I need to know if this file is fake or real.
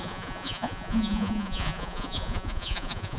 fake